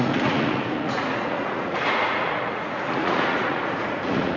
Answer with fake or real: fake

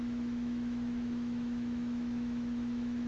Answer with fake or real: fake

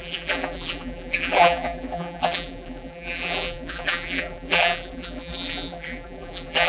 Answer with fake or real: fake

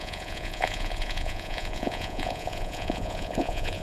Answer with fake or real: fake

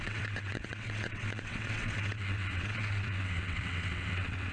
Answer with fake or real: fake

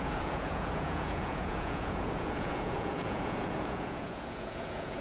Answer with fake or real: fake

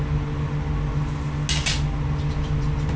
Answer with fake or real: real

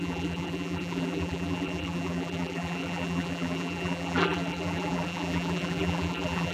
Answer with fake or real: fake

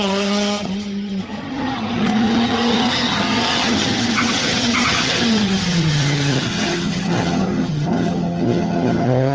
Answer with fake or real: fake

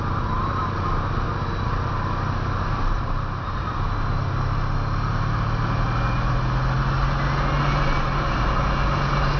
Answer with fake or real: real